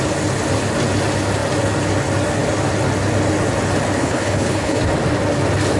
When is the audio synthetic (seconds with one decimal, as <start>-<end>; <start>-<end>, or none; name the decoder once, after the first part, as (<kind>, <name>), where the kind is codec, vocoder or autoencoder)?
4.0-4.8 (codec, HILCodec)